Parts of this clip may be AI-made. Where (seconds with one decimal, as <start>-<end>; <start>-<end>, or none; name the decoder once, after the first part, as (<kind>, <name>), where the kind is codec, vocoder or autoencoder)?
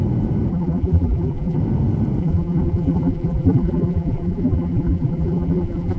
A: 0.5-1.6 (vocoder, BigVGAN v2); 2.2-6.0